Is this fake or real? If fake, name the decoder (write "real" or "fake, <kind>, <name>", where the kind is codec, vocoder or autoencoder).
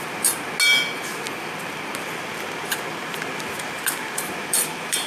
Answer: real